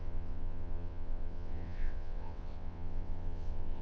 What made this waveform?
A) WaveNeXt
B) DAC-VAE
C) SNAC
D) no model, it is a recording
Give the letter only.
A